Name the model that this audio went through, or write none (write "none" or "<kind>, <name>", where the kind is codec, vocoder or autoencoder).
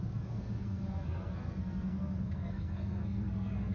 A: codec, SNAC